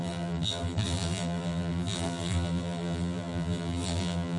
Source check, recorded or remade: remade